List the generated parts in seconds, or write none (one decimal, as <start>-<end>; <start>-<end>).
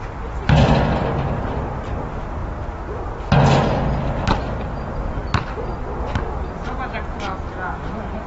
none